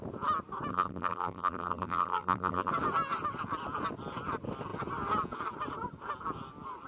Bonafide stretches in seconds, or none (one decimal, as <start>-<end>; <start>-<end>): 0.0-0.7; 2.7-6.9